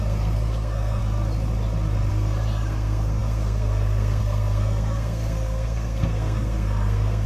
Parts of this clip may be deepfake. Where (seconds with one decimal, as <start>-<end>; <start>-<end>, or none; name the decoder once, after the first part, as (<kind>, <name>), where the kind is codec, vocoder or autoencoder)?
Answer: 0.0-1.0 (codec, SNAC); 2.1-7.3